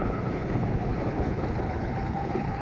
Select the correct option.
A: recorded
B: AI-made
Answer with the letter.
B